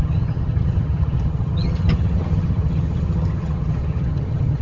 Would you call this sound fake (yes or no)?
yes